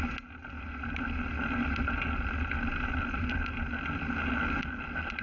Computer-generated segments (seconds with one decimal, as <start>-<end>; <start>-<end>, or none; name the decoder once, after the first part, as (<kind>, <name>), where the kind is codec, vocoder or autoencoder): none